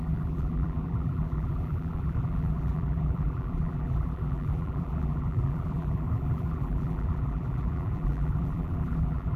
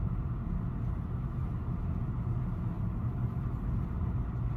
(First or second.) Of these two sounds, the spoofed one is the first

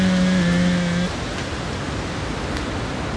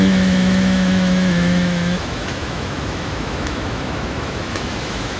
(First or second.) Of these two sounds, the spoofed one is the second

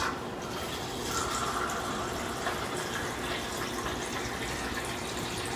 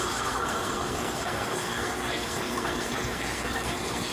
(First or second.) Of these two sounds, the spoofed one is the second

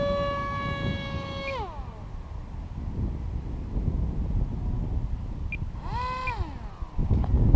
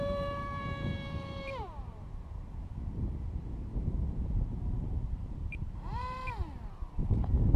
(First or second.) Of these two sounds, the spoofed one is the second